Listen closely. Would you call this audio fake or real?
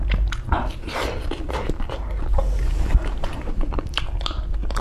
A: fake